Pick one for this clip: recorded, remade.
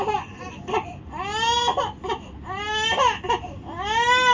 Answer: recorded